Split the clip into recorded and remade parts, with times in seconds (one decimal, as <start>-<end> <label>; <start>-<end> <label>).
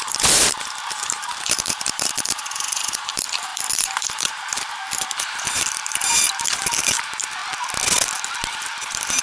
0.0-7.4 remade; 7.4-8.5 recorded; 8.5-9.2 remade